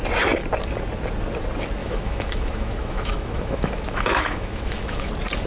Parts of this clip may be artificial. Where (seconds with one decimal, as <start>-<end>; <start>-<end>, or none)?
1.8-5.1